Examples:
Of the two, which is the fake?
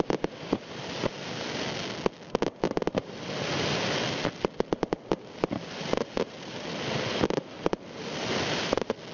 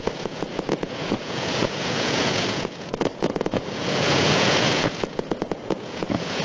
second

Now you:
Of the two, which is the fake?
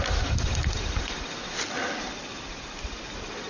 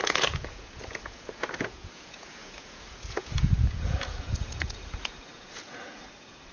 second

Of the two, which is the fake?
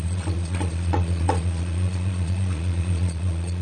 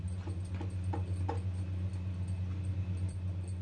first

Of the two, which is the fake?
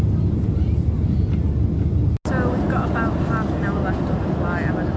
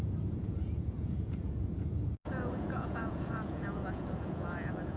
second